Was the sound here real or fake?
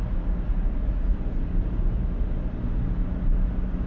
real